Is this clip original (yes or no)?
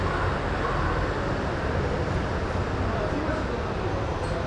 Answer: yes